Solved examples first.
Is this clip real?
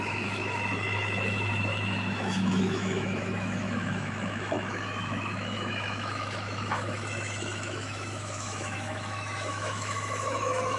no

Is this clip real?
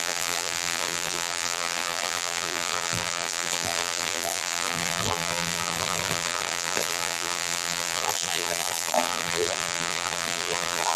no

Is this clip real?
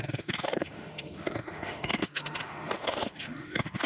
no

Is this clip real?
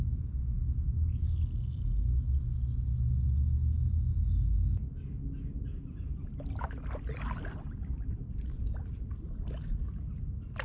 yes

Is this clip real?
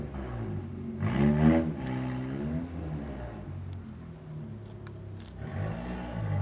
yes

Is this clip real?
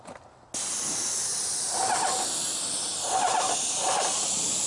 yes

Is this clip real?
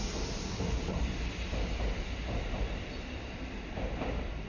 yes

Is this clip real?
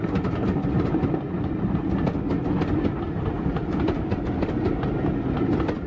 yes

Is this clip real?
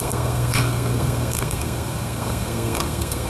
no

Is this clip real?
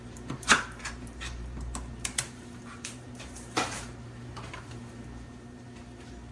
no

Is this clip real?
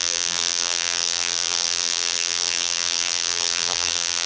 no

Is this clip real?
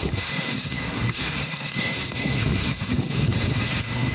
no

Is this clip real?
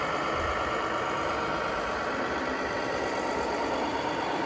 yes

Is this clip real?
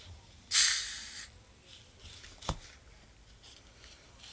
yes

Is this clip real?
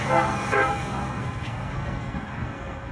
no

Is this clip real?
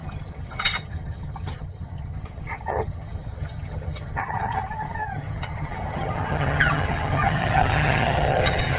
no